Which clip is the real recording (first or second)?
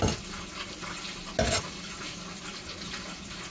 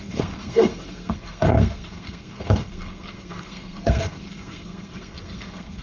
first